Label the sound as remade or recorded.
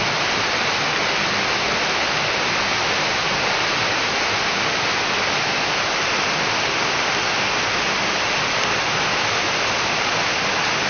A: recorded